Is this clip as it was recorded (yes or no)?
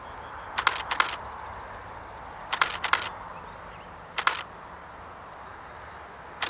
yes